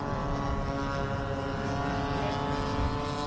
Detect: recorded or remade recorded